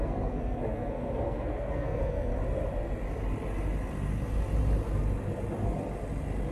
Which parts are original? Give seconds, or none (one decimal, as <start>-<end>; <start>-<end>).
2.3-6.5